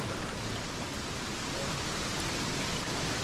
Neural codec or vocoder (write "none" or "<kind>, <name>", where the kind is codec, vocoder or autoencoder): vocoder, BigVGAN v2